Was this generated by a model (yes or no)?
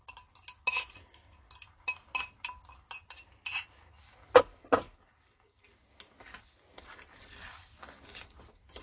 no